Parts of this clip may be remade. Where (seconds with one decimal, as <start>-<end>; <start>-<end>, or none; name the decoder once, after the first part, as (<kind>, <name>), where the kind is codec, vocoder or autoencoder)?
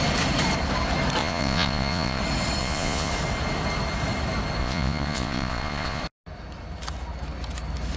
1.2-2.2 (vocoder, Vocos); 2.6-3.1; 4.6-6.0